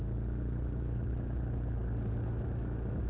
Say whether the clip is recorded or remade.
recorded